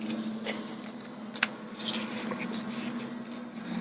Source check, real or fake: real